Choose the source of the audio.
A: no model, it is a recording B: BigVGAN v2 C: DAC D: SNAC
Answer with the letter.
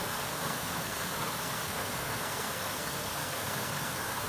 D